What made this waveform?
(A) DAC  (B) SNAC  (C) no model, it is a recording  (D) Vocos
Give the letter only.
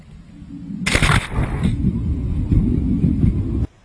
C